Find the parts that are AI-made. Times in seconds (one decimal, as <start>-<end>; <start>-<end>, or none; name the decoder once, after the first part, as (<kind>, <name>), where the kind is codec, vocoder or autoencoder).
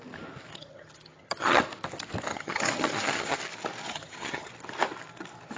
0.5-1.6 (vocoder, HiFi-GAN); 2.3-3.4; 3.8-4.5